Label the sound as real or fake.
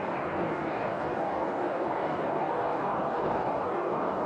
fake